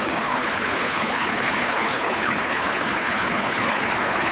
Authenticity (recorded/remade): remade